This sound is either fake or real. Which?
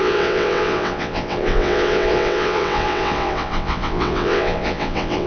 fake